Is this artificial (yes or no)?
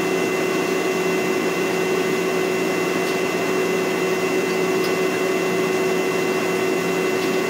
no